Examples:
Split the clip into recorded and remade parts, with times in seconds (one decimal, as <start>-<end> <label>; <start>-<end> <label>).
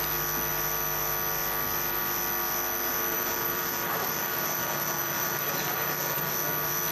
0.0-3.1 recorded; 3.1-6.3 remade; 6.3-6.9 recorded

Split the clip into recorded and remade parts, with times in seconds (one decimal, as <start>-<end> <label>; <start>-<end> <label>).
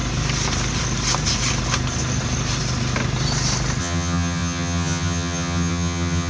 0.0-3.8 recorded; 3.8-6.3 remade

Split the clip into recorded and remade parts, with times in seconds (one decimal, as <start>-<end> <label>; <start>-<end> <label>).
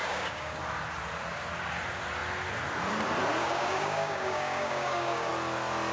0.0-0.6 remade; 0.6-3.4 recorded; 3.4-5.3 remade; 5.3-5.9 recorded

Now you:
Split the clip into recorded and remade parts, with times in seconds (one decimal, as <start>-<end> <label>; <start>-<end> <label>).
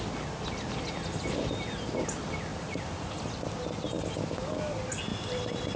0.0-2.5 recorded; 2.5-3.1 remade; 3.1-5.1 recorded; 5.1-5.8 remade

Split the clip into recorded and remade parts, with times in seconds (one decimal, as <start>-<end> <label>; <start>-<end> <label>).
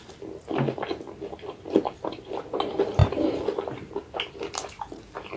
0.0-5.4 recorded